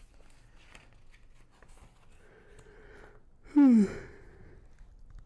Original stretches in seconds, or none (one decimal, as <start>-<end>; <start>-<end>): 0.0-5.3